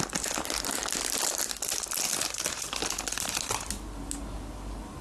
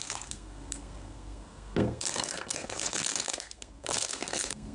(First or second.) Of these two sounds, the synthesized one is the second